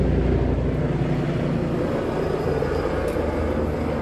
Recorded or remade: recorded